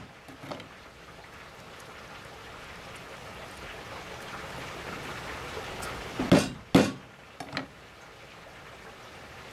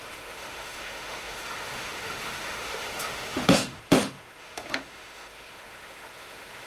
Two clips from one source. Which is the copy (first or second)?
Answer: second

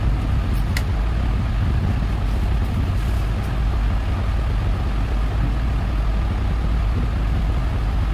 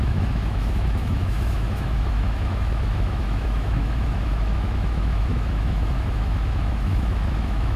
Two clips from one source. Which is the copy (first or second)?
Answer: second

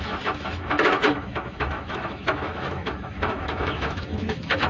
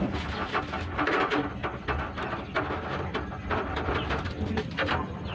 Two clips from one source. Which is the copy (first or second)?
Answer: first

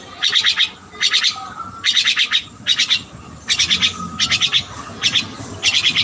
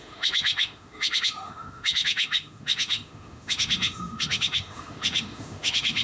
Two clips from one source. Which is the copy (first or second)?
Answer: second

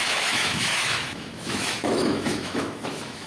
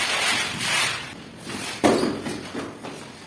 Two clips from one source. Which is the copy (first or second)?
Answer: first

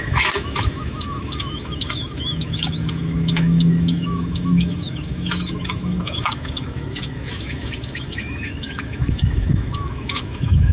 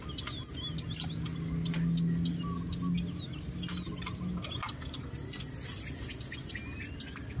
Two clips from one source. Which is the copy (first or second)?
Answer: first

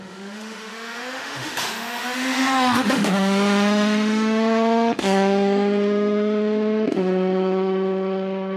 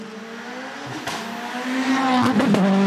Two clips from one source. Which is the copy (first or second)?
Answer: first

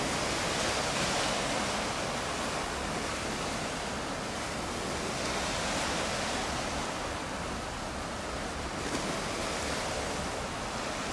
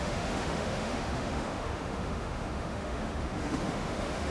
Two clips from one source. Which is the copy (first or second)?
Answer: second